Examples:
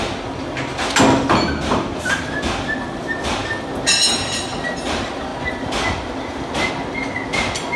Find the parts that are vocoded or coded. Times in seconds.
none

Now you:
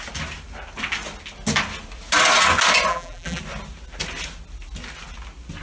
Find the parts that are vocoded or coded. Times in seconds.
2.9-3.4 (vocoder, BigVGAN v2)

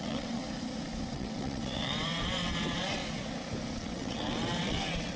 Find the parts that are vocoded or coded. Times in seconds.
0.0-0.4 (vocoder, WaveNeXt); 1.1-3.0; 3.8-5.2

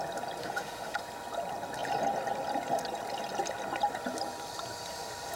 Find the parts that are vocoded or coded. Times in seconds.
0.4-1.0 (autoencoder, DAC-VAE)

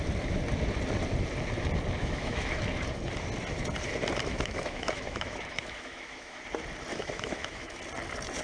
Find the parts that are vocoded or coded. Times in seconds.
2.0-2.6 (autoencoder, DAC-VAE); 4.3-6.4; 6.9-7.8

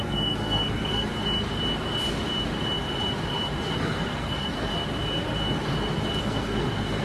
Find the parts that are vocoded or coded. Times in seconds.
0.0-1.1 (codec, SNAC); 3.7-4.7; 6.2-7.0